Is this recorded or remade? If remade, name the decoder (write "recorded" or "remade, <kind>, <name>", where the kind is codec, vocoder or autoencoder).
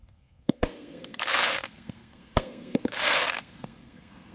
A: remade, codec, SNAC